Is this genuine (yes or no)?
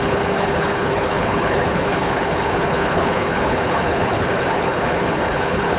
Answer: no